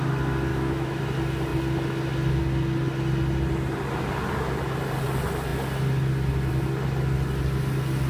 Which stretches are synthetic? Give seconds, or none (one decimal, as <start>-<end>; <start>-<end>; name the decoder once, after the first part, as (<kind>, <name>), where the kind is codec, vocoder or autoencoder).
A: 0.5-1.0 (autoencoder, DAC-VAE)